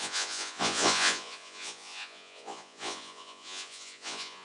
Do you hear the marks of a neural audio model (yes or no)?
yes